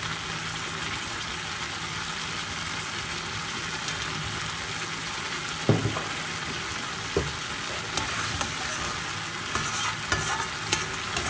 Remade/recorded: recorded